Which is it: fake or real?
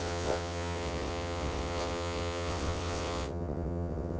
fake